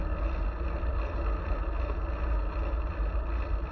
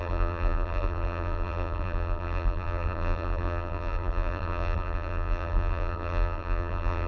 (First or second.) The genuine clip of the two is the first